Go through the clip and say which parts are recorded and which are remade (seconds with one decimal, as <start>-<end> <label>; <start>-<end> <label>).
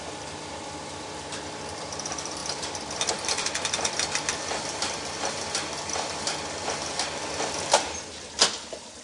0.0-9.0 remade